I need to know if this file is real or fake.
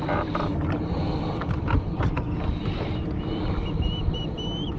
real